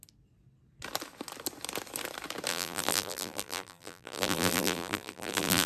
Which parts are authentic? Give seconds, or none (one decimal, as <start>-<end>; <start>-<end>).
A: 0.0-2.5